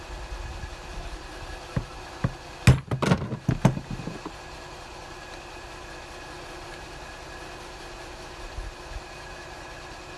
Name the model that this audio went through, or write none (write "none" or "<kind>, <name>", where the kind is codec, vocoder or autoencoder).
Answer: none